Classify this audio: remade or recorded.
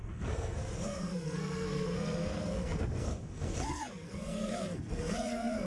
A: remade